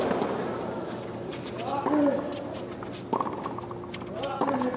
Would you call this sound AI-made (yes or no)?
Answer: no